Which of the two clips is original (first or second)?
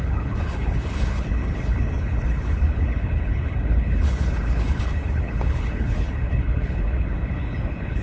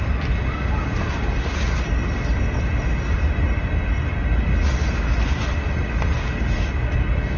second